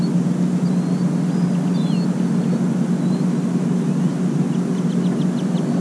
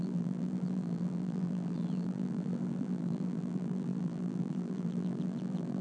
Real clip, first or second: first